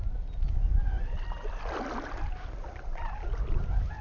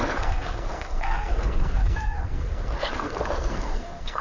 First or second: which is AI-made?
second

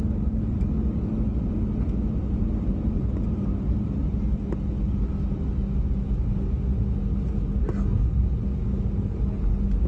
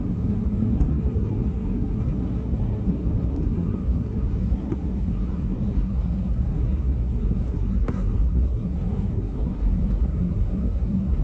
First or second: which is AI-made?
second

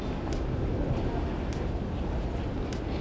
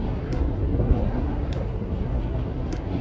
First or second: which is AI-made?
second